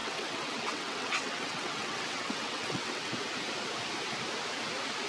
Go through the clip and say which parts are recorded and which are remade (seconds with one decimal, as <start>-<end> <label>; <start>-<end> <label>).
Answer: 0.0-3.1 remade; 3.1-5.1 recorded